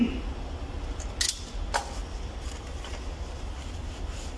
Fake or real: real